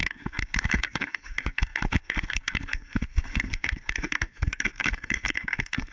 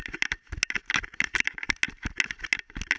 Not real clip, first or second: first